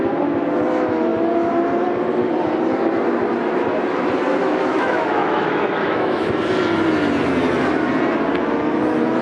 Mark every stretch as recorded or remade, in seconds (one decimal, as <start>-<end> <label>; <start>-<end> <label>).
0.0-4.7 recorded; 4.7-6.3 remade; 6.3-9.2 recorded